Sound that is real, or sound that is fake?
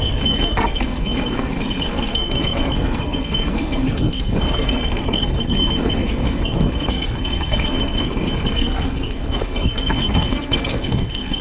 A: fake